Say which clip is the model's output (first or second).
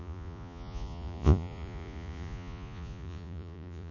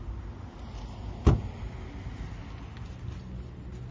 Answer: first